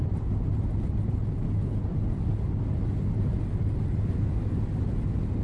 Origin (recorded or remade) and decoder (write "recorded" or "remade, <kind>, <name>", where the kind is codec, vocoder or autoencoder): recorded